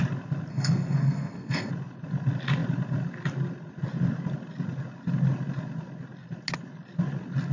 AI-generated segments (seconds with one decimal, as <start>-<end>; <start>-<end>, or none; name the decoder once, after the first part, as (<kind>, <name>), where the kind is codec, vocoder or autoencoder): 0.5-1.7 (codec, SNAC)